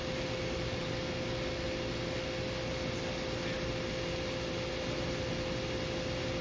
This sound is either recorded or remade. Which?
recorded